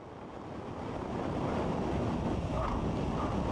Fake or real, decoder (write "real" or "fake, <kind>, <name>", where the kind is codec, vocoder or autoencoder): real